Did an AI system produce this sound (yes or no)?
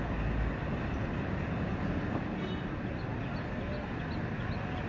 no